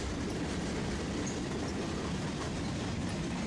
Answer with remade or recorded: recorded